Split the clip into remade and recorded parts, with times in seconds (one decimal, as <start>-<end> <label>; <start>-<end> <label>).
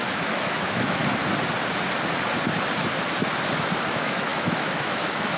0.0-1.0 remade; 1.0-3.9 recorded; 3.9-5.4 remade